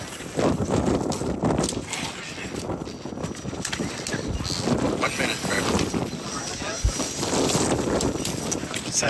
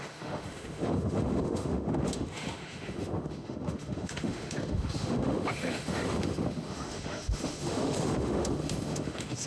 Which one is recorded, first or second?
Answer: first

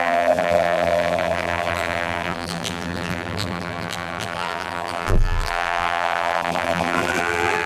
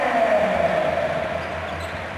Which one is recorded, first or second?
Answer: second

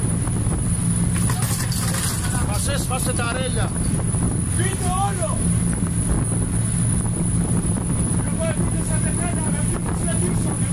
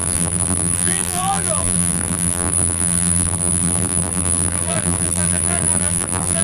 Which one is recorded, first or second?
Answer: first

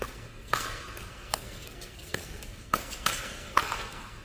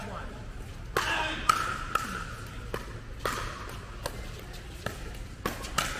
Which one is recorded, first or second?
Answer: second